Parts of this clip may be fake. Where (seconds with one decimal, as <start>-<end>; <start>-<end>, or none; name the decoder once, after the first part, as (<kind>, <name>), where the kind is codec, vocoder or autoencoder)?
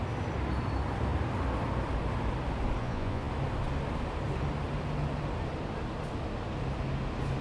2.8-3.3 (vocoder, Vocos)